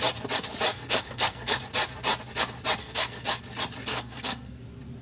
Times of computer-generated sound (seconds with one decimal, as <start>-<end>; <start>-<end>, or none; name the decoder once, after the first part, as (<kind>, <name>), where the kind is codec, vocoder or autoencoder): 0.7-1.6 (codec, SNAC); 2.8-3.4; 3.9-4.6